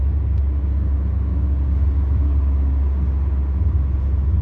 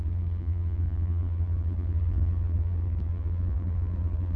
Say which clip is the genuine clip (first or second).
first